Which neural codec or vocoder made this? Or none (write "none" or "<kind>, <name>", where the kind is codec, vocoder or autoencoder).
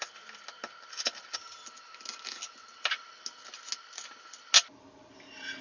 none